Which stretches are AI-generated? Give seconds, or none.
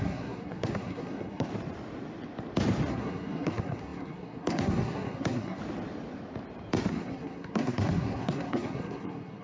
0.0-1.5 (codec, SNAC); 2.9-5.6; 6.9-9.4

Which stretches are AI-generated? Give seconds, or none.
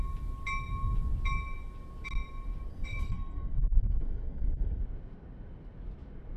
2.7-4.8 (codec, SNAC)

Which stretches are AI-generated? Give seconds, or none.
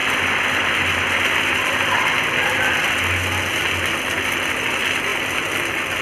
none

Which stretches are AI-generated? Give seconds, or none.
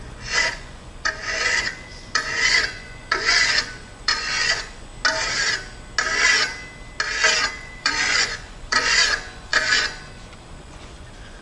0.0-4.9 (vocoder, Vocos); 7.5-11.4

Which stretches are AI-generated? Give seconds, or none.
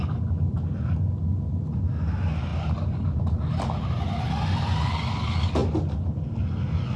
none